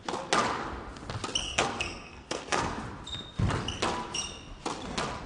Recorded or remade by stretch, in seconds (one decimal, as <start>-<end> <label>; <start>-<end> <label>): 0.0-1.4 recorded; 1.4-2.8 remade; 2.8-5.3 recorded